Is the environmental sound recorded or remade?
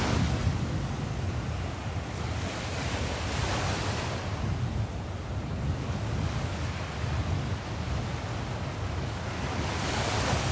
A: recorded